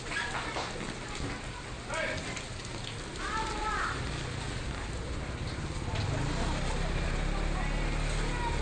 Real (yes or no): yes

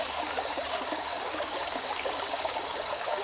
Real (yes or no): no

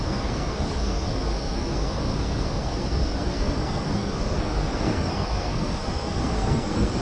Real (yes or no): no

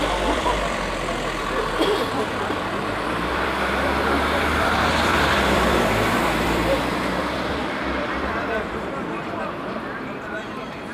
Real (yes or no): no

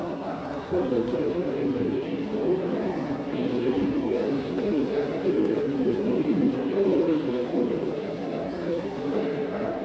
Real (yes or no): no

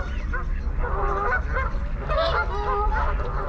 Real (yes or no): yes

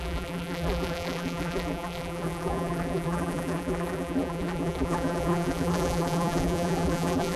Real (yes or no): no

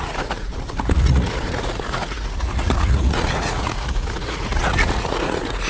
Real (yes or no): no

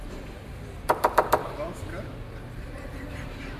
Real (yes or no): no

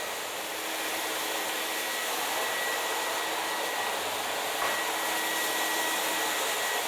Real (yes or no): yes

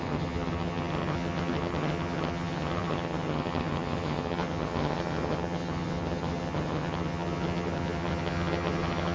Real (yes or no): no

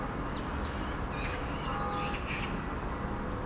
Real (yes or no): yes